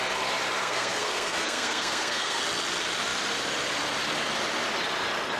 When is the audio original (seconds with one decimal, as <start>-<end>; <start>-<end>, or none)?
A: 0.0-0.6; 2.4-5.4